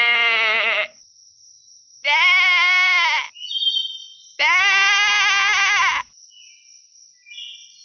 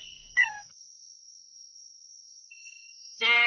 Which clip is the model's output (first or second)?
second